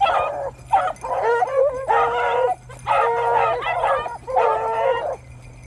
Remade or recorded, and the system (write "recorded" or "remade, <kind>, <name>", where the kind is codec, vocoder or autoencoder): recorded